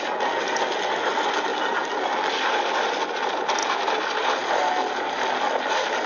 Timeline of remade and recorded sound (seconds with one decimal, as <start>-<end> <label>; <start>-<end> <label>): 0.0-6.1 recorded